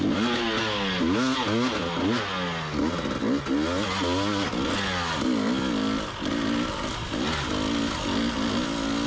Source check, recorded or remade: recorded